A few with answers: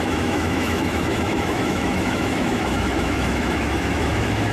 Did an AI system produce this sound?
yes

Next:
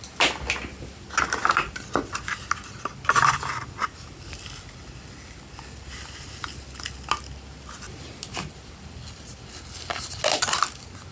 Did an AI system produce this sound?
no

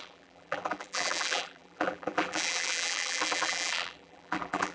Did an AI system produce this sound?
yes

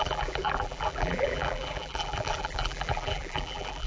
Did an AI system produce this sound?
yes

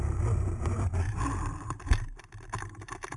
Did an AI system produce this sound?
yes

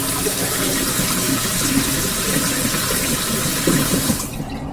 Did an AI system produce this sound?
no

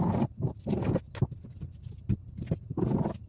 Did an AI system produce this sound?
no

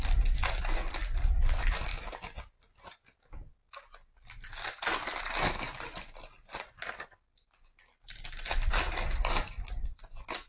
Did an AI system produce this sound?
no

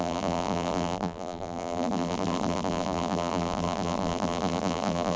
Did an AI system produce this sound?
yes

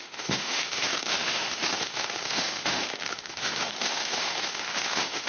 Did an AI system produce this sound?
yes